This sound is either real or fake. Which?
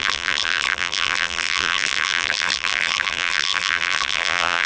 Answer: fake